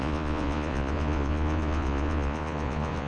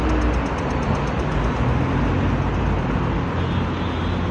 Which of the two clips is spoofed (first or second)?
first